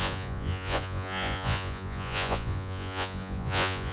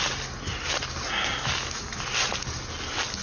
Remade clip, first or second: first